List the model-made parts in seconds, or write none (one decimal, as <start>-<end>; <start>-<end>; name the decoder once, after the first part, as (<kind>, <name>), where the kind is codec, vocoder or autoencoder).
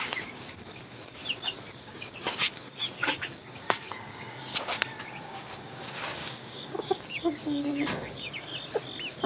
0.0-1.2 (codec, DAC); 1.8-4.5; 5.2-8.5